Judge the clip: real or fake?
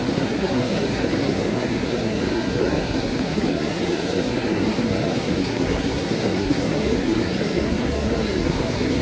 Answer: fake